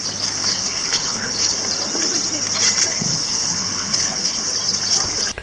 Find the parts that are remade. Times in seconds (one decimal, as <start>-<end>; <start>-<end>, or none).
0.4-1.6; 2.9-4.4